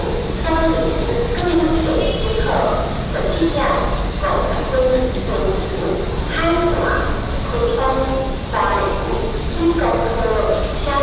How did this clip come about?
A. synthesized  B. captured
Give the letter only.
B